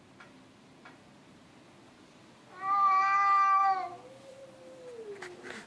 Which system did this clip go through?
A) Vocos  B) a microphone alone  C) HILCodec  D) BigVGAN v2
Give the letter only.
B